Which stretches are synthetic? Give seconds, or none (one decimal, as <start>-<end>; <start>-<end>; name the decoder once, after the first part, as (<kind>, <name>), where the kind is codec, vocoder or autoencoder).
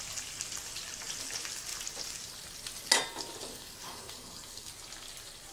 3.5-4.7 (codec, SNAC)